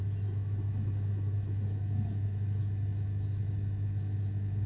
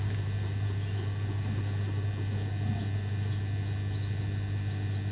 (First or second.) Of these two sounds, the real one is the second